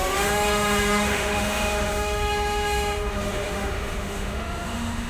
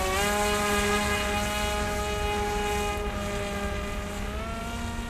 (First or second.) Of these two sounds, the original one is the second